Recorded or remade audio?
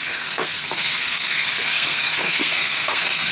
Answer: remade